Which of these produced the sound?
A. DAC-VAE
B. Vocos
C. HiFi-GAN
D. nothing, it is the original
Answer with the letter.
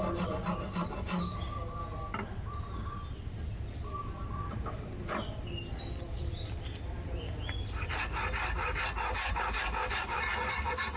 D